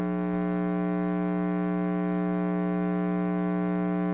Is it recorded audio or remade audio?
recorded